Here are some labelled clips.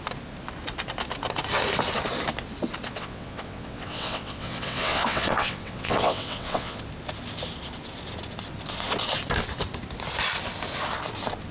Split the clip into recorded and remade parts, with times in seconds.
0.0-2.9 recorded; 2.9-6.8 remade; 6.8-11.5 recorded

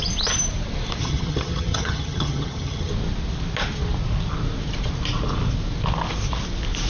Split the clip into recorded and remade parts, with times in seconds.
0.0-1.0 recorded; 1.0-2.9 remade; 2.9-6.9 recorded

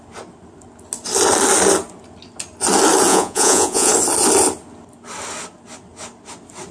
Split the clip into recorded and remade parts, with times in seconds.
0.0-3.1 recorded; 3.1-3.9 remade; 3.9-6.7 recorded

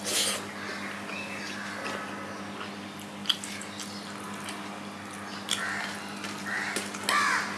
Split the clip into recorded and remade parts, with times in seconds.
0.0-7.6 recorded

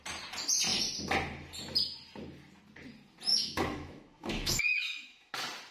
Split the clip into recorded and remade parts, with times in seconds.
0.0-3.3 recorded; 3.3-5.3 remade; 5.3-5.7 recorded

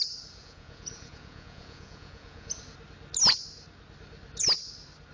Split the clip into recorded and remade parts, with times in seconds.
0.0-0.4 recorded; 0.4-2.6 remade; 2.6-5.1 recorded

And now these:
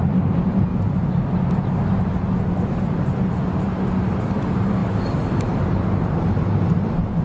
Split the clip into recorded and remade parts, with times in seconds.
0.0-0.7 remade; 0.7-2.5 recorded; 2.5-7.2 remade